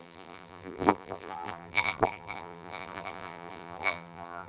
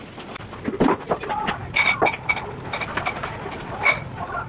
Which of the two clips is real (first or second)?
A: second